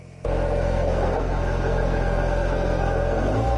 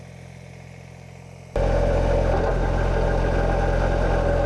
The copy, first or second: first